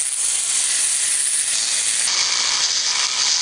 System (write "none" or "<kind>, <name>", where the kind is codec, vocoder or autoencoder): none